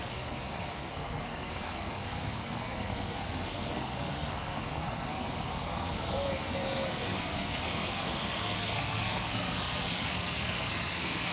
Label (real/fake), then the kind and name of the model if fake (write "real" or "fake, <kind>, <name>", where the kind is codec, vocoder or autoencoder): fake, codec, SNAC